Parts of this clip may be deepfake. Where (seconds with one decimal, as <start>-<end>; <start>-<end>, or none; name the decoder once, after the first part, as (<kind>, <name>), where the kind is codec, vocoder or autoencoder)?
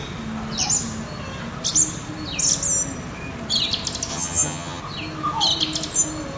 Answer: 4.1-4.8 (vocoder, HiFi-GAN)